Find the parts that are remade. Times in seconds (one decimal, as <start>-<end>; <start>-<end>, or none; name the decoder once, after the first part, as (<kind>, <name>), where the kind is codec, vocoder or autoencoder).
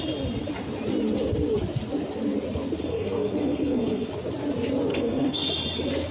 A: 2.8-4.1 (codec, SNAC); 4.9-5.5